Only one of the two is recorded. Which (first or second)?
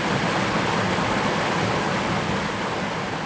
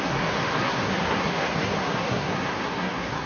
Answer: first